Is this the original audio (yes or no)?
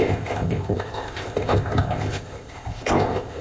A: no